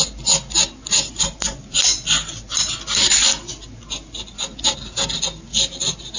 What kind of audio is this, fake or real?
real